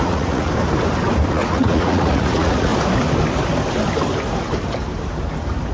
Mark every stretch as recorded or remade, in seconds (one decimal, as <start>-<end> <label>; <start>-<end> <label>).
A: 0.0-0.5 remade; 0.5-1.3 recorded; 1.3-2.7 remade; 2.7-5.7 recorded